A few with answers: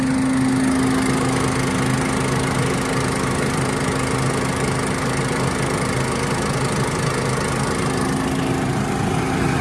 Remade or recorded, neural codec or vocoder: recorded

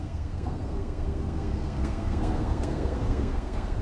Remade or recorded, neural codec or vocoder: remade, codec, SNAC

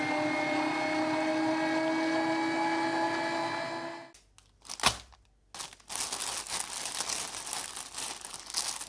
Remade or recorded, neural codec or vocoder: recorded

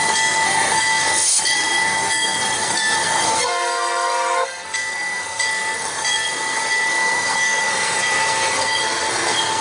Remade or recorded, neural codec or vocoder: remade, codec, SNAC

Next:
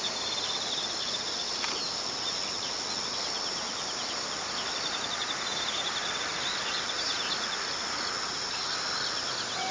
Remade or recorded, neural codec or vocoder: recorded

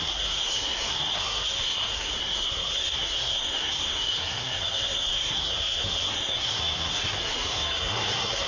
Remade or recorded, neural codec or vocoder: remade, codec, SNAC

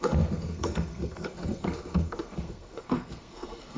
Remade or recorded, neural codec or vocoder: remade, codec, SNAC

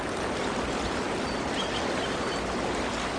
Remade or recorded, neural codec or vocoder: recorded